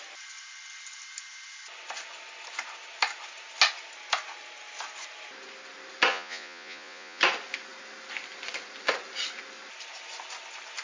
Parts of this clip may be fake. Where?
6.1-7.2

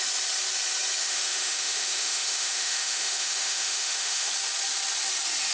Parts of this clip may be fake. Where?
1.0-4.3